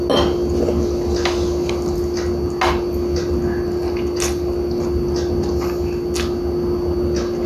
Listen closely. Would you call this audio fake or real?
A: real